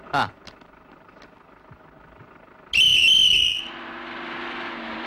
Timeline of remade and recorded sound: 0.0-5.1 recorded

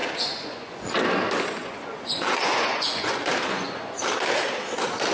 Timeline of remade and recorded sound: 0.0-0.9 remade; 0.9-1.6 recorded; 1.6-4.0 remade; 4.0-5.1 recorded

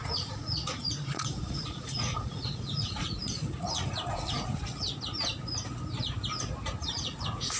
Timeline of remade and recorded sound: 0.0-4.6 remade; 4.6-6.8 recorded; 6.8-7.6 remade

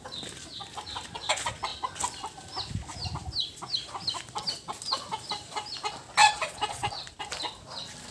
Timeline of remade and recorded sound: 0.0-6.2 recorded; 6.2-6.9 remade; 6.9-8.1 recorded